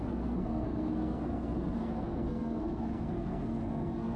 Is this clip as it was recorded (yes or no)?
no